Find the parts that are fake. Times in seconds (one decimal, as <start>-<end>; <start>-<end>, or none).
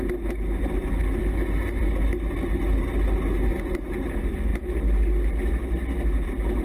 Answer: none